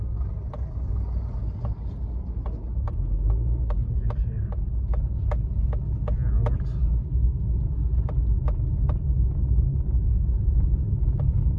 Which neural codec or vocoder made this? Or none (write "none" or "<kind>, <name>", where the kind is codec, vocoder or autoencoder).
none